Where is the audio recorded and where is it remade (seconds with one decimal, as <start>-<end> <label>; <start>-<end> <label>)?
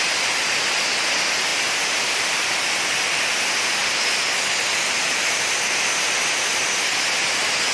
0.0-7.7 recorded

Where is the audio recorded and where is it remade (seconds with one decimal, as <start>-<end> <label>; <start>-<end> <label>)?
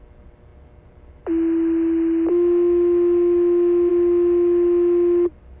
0.0-5.6 recorded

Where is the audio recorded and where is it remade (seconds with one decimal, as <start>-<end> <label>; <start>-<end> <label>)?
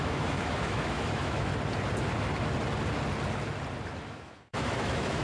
0.0-1.5 remade; 1.5-4.0 recorded; 4.0-5.2 remade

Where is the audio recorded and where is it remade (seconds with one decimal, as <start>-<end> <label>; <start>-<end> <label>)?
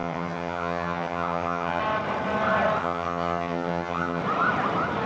0.0-1.8 remade; 1.8-2.8 recorded; 2.8-4.2 remade; 4.2-5.1 recorded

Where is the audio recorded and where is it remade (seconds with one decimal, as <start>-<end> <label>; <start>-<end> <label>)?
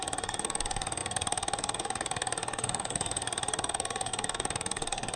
0.0-5.2 remade